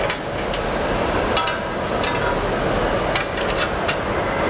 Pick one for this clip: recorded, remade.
recorded